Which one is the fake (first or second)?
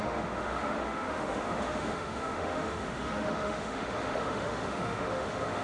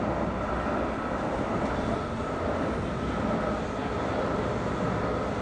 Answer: first